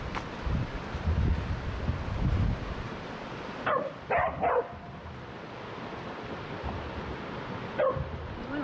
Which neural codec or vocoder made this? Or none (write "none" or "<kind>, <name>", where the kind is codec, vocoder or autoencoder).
none